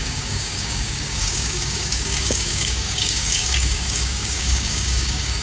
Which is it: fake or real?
fake